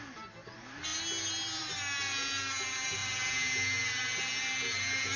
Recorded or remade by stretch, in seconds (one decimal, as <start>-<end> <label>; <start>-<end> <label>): 0.0-5.2 recorded